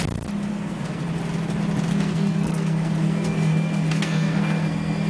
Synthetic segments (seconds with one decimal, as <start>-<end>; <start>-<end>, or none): 0.5-1.0; 1.9-5.1